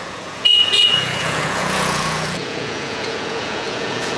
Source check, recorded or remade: remade